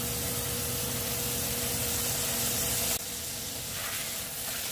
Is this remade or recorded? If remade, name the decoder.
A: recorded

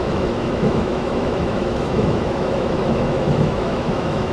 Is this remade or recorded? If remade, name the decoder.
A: remade, autoencoder, DAC-VAE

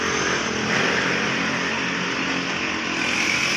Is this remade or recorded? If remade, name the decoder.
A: recorded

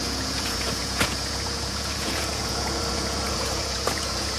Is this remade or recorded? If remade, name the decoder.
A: remade, vocoder, Vocos